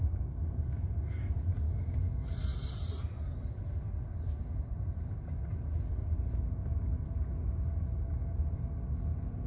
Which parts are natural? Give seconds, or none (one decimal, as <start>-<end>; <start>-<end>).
0.0-9.5